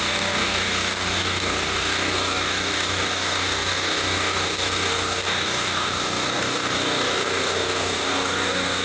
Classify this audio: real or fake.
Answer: fake